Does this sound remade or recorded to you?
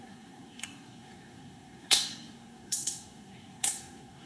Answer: remade